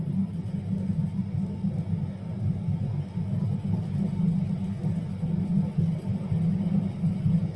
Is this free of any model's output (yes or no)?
yes